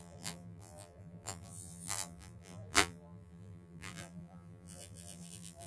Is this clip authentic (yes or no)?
no